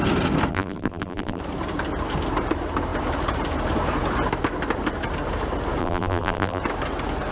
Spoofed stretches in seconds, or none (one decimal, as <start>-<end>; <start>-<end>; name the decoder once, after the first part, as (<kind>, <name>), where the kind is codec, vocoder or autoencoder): 0.5-1.4 (vocoder, BigVGAN v2); 5.8-6.6